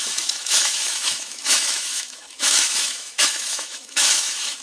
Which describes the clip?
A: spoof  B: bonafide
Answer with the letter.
A